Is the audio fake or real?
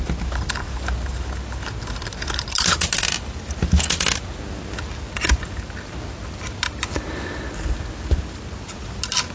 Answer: real